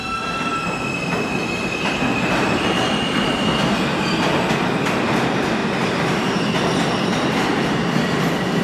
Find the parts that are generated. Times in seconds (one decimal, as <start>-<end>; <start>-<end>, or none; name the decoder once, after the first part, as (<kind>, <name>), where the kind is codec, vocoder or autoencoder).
3.9-4.5 (vocoder, BigVGAN v2); 5.6-6.4